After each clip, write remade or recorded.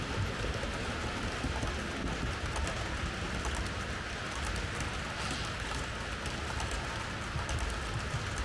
recorded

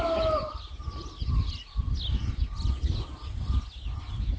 recorded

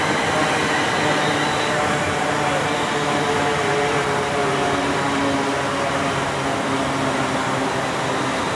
recorded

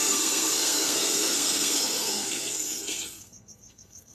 remade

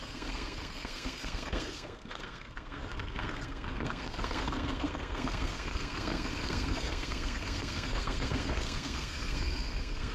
remade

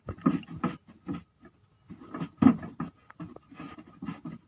recorded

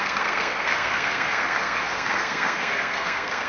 remade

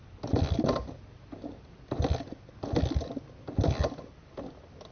recorded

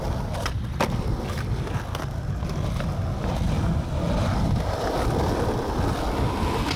recorded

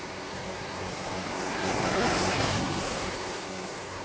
remade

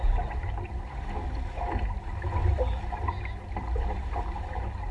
recorded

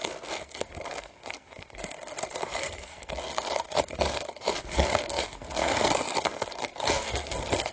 remade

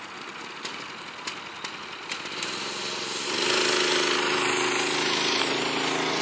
recorded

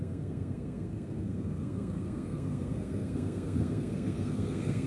remade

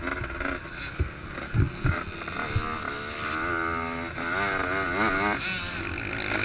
recorded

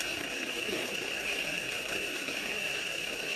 remade